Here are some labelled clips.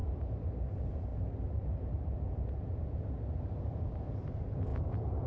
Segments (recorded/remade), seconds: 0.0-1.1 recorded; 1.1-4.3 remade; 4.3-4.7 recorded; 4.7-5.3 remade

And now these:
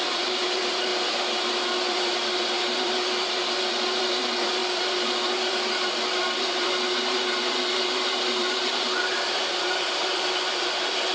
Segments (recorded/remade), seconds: 0.0-0.9 remade; 0.9-1.9 recorded; 1.9-11.1 remade

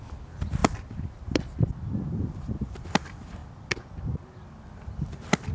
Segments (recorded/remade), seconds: 0.0-5.5 remade